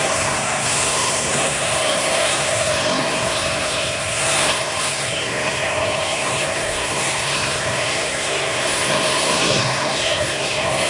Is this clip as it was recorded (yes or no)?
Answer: no